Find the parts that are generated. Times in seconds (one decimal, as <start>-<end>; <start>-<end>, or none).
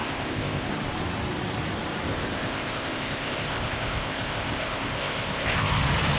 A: 0.0-0.7; 2.1-5.8